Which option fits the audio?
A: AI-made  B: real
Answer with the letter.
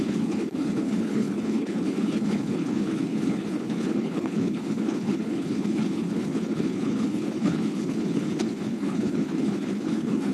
A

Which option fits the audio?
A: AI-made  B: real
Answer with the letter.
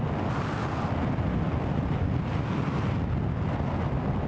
B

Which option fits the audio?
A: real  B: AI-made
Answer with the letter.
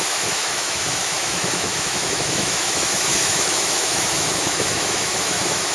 B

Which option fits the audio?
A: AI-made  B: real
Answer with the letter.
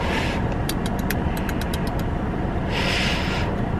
B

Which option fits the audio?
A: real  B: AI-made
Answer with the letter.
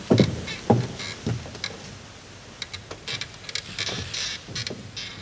A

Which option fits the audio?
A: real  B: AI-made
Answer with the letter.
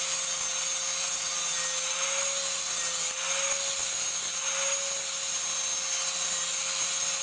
A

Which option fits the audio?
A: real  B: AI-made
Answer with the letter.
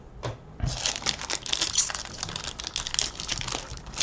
A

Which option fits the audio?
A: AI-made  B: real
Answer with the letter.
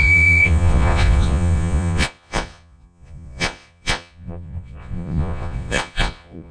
A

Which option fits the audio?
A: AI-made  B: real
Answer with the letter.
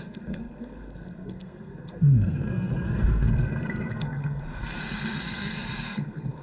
A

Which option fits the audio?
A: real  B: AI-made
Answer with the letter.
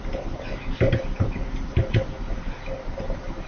A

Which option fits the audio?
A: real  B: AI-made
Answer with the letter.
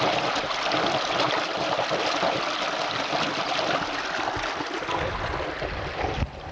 A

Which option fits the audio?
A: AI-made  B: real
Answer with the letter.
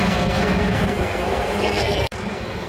A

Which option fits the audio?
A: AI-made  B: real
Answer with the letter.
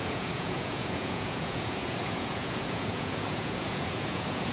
A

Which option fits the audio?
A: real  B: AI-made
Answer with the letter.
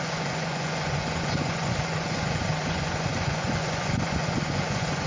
B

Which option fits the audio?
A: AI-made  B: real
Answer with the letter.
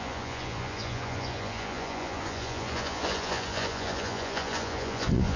A